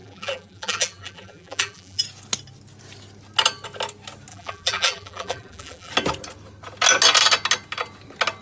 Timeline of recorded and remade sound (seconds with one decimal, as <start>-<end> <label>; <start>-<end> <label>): 0.0-2.0 remade; 2.0-4.3 recorded; 4.3-5.9 remade; 5.9-8.4 recorded

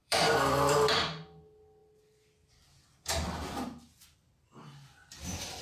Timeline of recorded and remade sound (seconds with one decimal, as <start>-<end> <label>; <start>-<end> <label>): 0.0-1.2 remade; 1.2-1.8 recorded; 1.8-4.3 remade; 4.3-5.6 recorded

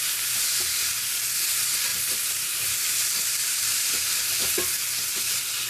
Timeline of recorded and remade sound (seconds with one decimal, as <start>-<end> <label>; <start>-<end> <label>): 0.0-1.9 recorded; 1.9-4.4 remade; 4.4-5.7 recorded

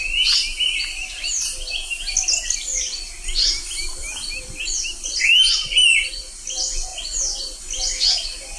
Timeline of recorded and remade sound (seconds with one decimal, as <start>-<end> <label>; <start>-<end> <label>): 0.0-3.9 recorded; 3.9-5.2 remade; 5.2-8.6 recorded

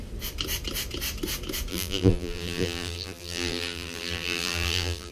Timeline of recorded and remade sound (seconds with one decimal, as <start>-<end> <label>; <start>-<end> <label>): 0.0-1.7 recorded; 1.7-5.1 remade